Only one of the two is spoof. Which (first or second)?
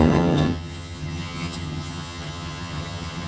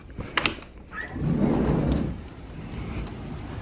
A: first